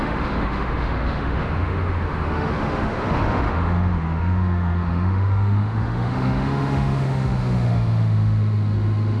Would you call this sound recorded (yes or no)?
no